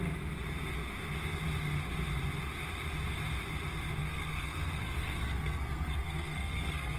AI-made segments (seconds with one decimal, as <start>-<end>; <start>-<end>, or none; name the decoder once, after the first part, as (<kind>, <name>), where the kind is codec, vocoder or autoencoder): 4.0-7.0 (codec, SNAC)